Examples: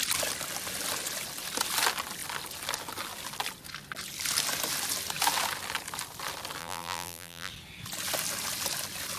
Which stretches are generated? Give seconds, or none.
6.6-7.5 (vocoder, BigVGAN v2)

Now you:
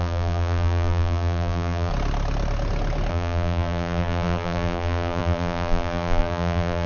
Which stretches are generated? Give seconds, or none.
0.0-1.9 (vocoder, BigVGAN v2); 3.1-6.9

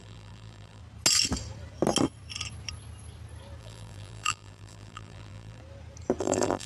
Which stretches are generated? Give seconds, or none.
0.0-0.8 (vocoder, BigVGAN v2); 3.6-5.6; 6.2-6.7